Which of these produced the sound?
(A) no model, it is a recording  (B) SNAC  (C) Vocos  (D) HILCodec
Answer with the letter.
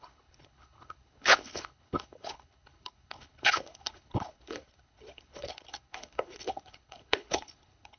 D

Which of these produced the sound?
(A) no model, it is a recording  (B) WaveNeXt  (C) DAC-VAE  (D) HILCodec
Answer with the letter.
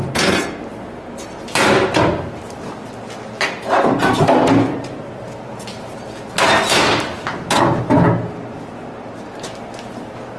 A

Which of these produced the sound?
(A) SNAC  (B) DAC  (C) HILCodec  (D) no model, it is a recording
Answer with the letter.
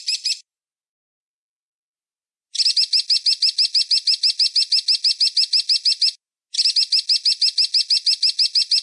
D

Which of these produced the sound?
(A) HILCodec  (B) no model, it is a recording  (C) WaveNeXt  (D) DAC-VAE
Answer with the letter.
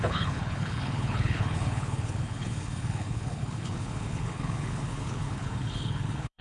A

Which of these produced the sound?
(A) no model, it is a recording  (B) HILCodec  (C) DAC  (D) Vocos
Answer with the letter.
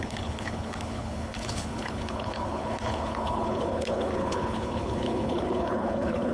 B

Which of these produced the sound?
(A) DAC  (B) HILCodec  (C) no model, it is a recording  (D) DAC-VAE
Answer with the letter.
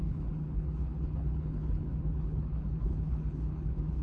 B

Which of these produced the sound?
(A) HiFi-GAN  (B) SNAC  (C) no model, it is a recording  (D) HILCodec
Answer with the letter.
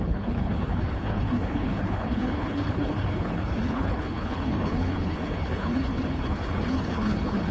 D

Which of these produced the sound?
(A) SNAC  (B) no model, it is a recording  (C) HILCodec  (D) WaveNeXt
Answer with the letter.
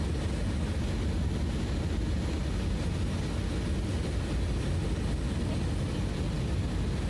B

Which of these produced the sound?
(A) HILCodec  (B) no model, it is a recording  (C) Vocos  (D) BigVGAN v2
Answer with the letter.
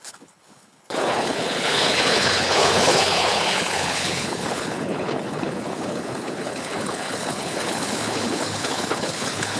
A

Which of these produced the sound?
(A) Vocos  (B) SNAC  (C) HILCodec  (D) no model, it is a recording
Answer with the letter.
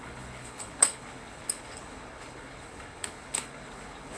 C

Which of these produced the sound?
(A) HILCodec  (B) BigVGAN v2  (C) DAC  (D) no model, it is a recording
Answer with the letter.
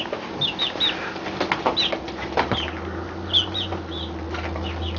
D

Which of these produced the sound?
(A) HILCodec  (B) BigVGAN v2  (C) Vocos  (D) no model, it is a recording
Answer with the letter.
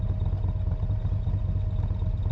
D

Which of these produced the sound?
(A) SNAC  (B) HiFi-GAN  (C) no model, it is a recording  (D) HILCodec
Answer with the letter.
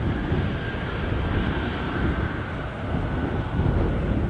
C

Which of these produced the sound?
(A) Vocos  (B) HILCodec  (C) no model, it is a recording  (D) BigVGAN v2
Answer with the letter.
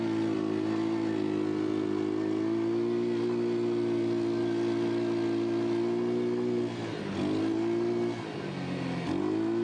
C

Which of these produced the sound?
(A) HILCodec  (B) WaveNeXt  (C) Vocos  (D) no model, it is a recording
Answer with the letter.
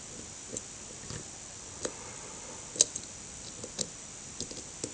D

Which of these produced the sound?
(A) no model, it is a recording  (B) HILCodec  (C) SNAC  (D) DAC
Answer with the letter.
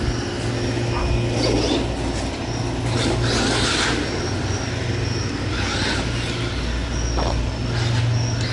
A